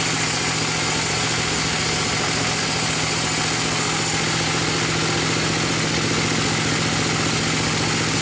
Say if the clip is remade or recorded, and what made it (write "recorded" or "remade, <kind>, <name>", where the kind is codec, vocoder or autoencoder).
recorded